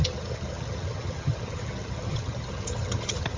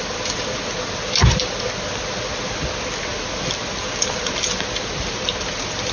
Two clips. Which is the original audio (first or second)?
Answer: second